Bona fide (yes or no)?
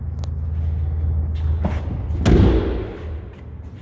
yes